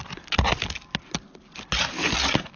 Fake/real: real